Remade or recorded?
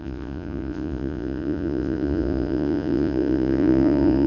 remade